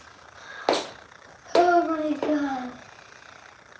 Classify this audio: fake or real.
real